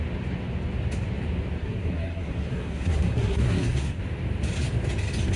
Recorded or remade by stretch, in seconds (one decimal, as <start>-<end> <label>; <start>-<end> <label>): 0.0-1.6 recorded; 1.6-4.0 remade; 4.0-5.4 recorded

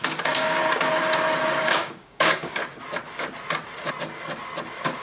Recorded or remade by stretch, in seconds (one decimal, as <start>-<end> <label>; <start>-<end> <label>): 0.0-0.6 remade; 0.6-1.6 recorded; 1.6-2.6 remade; 2.6-5.0 recorded

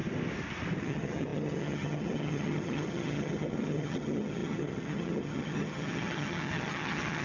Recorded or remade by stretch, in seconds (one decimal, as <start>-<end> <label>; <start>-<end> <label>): 0.0-0.8 recorded; 0.8-7.2 remade

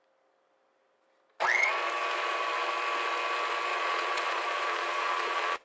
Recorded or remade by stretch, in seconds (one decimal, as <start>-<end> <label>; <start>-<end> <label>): 0.0-3.7 recorded; 3.7-5.6 remade

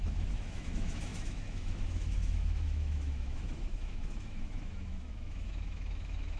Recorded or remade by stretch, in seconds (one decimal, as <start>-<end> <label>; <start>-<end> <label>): 0.0-6.4 remade